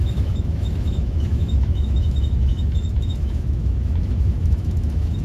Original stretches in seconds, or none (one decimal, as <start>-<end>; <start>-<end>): none